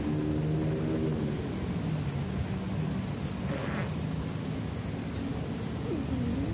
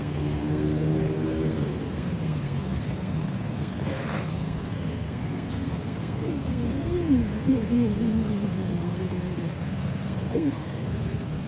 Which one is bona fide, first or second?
first